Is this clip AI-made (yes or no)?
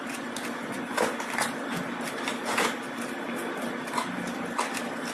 no